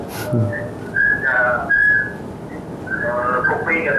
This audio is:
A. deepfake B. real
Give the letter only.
B